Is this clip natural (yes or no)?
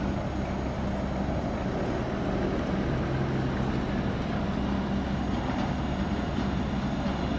yes